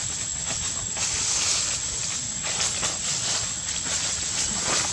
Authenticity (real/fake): real